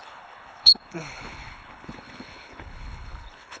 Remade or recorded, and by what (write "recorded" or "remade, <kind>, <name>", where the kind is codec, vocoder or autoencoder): remade, codec, HILCodec